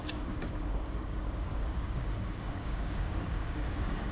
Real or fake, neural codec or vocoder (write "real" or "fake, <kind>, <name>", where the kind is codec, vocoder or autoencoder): fake, codec, DAC